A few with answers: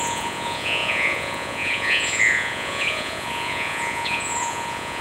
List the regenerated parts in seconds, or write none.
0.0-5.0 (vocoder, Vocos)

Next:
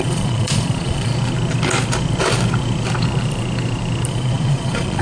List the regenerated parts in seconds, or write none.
0.0-1.1 (vocoder, Vocos); 4.1-5.0

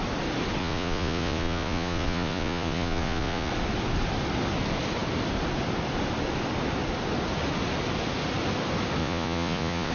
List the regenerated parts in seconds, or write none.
0.6-3.5 (vocoder, Vocos); 9.0-9.9

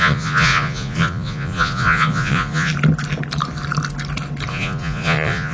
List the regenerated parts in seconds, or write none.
0.0-2.7 (vocoder, Vocos); 4.5-5.5

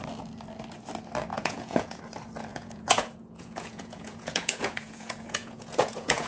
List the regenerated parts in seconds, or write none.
1.3-2.0 (vocoder, Vocos); 2.5-6.3